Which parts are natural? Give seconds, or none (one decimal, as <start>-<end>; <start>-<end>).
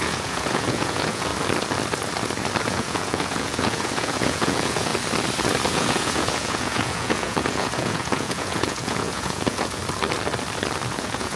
1.3-2.6; 4.9-5.7; 9.8-10.9